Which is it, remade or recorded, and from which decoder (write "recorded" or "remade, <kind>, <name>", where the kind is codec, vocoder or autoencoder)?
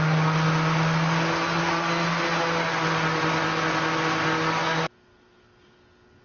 recorded